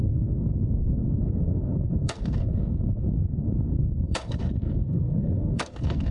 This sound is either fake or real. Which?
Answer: fake